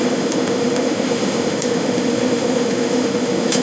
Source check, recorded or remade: remade